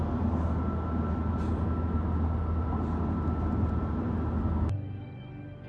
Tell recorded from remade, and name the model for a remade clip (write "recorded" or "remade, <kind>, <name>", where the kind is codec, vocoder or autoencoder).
recorded